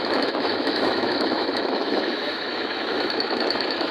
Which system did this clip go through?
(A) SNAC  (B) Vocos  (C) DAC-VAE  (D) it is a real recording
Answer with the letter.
C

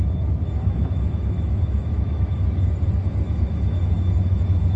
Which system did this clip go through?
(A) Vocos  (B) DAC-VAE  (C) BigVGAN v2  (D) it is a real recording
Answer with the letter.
B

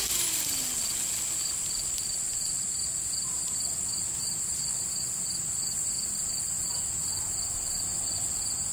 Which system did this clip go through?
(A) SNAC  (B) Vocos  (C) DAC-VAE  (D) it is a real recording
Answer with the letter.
D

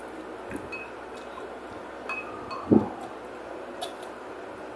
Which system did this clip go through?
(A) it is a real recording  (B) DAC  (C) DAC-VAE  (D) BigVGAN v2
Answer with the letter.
A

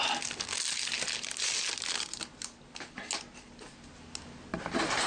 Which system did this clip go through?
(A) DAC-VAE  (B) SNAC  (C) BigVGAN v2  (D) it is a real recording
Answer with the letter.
D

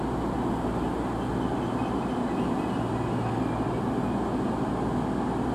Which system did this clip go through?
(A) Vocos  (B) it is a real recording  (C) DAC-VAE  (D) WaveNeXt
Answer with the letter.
B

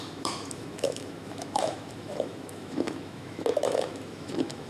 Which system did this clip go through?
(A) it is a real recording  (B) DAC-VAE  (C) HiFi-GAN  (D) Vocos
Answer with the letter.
B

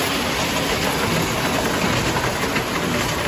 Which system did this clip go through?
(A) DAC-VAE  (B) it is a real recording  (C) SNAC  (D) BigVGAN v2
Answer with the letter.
B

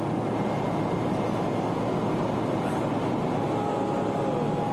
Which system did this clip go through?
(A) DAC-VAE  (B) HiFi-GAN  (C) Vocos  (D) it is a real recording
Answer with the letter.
D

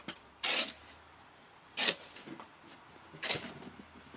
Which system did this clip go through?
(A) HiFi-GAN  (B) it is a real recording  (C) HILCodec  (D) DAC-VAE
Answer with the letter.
B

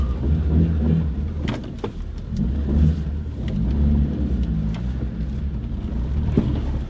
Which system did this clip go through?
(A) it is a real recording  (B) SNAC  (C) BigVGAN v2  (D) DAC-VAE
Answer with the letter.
A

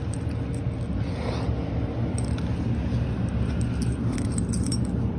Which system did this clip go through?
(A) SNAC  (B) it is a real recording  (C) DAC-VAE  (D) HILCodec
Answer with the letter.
B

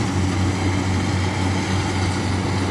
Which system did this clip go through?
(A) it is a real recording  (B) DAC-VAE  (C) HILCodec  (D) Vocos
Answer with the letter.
A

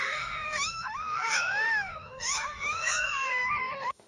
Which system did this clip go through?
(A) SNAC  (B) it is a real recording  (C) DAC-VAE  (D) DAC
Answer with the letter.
C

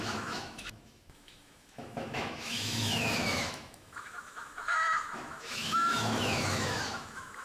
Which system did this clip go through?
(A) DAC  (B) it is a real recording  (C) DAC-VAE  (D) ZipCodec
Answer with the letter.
C